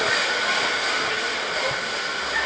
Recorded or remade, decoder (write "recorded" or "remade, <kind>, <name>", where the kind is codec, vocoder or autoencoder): recorded